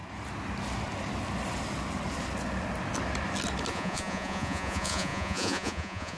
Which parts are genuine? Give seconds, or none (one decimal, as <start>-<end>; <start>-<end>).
0.0-3.7